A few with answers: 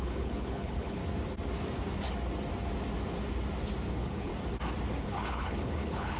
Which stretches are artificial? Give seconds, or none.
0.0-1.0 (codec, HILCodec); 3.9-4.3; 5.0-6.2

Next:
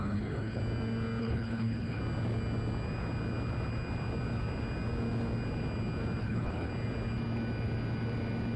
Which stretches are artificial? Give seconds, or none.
0.0-0.6 (codec, HILCodec); 1.2-2.0; 6.2-6.7

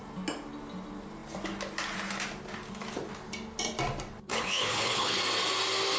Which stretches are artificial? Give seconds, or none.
4.3-5.2 (codec, HILCodec)

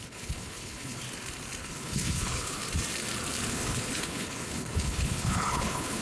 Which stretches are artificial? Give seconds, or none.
0.0-1.0 (codec, HILCodec); 1.6-2.6; 3.5-6.0

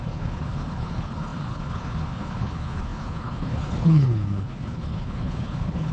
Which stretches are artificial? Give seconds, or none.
0.0-5.9 (codec, HILCodec)

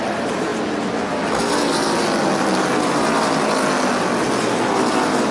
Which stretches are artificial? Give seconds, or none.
none

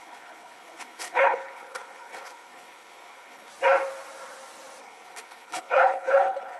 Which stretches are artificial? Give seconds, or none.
0.0-3.5 (codec, HILCodec); 4.8-6.6

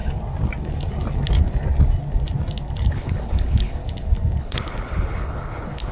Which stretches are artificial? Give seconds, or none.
2.9-3.8 (codec, HILCodec); 4.4-5.9